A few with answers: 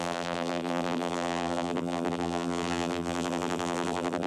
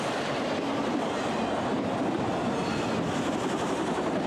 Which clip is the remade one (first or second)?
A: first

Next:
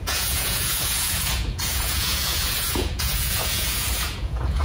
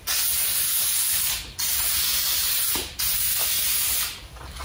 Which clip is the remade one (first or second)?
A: first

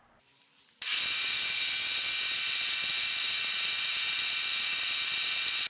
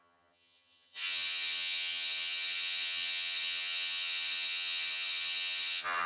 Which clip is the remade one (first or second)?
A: second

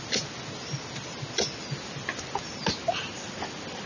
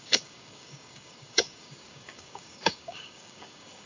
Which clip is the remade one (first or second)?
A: second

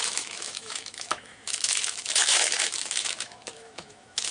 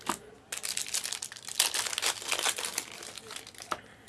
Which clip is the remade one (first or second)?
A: first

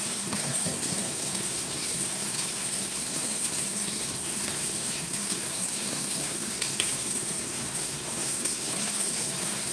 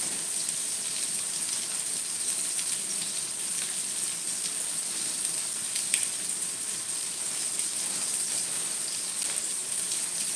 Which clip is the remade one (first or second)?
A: first